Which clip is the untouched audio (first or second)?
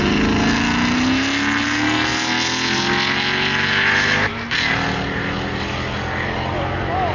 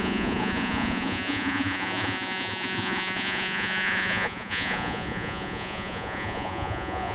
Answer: first